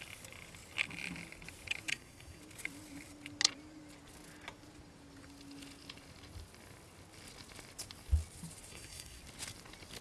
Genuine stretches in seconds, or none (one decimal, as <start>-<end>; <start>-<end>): 0.0-1.9; 2.4-8.7; 9.2-10.0